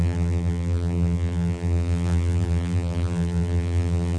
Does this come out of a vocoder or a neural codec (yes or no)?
yes